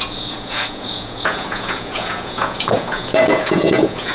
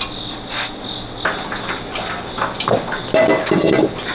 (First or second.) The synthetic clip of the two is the first